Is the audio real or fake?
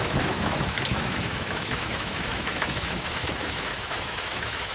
fake